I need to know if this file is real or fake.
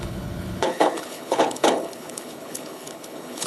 fake